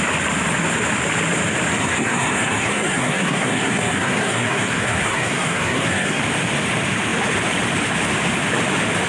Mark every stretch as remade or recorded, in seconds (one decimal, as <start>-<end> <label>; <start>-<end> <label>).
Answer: 0.0-1.8 recorded; 1.8-6.2 remade; 6.2-9.1 recorded